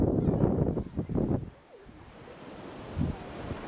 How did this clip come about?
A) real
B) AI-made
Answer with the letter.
A